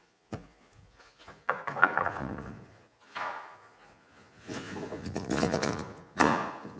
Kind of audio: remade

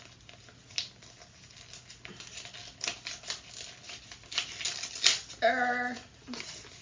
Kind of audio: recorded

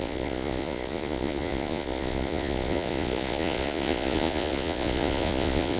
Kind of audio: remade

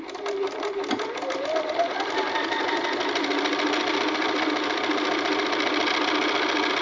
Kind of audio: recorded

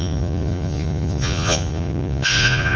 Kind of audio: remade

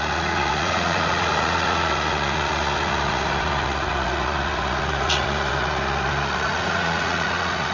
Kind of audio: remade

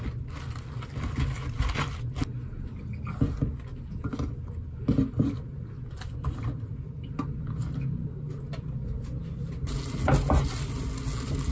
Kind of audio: recorded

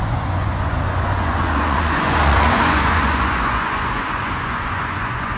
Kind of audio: remade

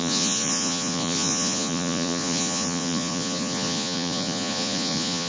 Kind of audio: remade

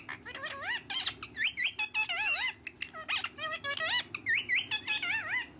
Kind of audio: recorded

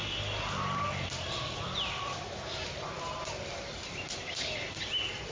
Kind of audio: recorded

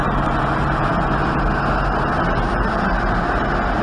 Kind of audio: recorded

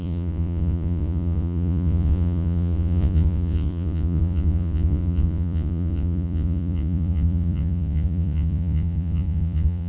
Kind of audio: remade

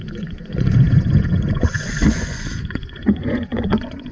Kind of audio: remade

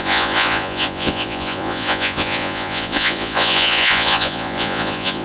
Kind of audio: remade